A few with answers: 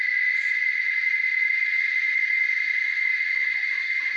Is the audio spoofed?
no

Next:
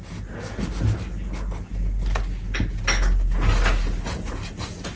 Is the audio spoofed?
no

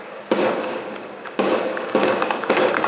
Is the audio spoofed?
yes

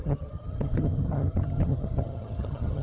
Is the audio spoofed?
yes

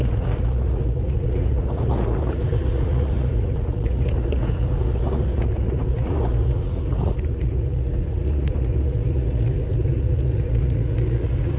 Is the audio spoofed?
yes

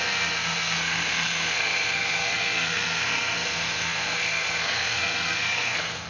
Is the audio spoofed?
yes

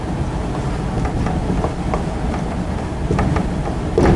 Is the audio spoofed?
no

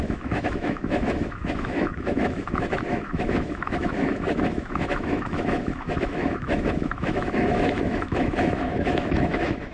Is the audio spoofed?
yes